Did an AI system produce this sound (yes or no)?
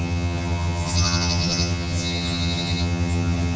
yes